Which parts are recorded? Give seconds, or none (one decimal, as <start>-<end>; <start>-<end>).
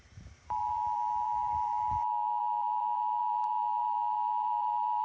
none